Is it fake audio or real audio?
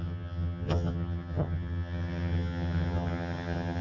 fake